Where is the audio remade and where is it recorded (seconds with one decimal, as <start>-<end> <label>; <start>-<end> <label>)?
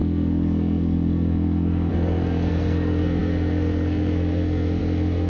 0.0-5.3 remade